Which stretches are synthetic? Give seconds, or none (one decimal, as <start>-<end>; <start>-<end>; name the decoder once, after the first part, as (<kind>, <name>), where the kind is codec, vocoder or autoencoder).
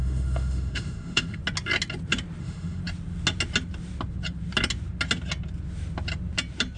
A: 0.0-1.4 (autoencoder, DAC-VAE); 2.4-2.8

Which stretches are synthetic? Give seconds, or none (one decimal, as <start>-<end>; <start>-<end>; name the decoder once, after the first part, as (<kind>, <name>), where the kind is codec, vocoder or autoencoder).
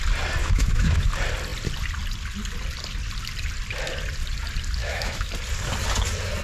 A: 0.4-1.1 (autoencoder, DAC-VAE); 4.8-5.3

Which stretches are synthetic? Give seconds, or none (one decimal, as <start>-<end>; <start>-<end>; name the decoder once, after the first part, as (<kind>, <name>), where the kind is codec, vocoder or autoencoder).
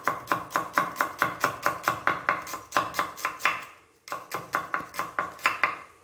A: none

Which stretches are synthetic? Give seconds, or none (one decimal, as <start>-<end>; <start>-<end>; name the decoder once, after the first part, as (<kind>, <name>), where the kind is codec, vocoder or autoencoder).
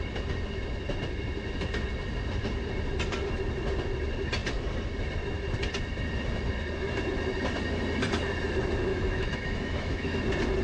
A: 8.9-10.2 (autoencoder, DAC-VAE)